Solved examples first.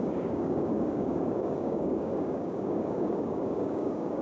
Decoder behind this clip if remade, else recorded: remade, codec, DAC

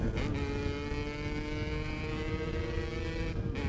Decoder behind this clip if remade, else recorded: recorded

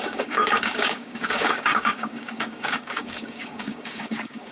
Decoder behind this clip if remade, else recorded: remade, codec, DAC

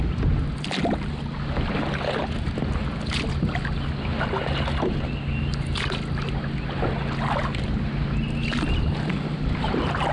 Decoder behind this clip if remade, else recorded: recorded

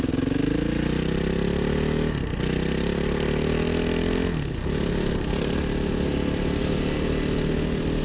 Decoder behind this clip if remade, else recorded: recorded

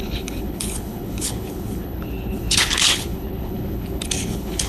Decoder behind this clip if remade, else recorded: remade, codec, HILCodec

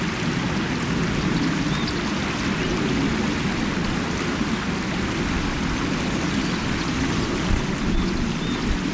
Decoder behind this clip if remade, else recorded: recorded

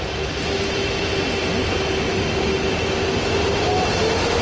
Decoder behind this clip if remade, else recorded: recorded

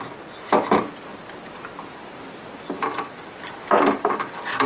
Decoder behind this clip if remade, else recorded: recorded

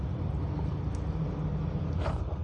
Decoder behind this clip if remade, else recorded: recorded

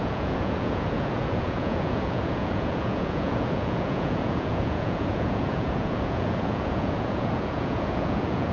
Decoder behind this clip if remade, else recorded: remade, vocoder, Vocos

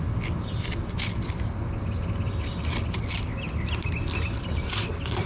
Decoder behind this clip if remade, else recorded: recorded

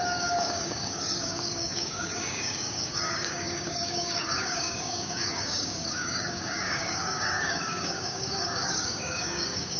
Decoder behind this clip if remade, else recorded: remade, codec, DAC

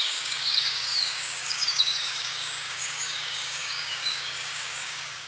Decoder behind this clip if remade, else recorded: remade, codec, DAC